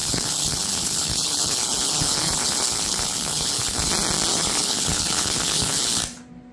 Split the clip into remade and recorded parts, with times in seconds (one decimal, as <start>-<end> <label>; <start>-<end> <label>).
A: 0.0-3.9 remade; 3.9-4.3 recorded; 4.3-6.0 remade; 6.0-6.5 recorded